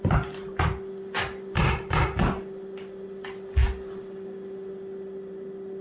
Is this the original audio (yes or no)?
yes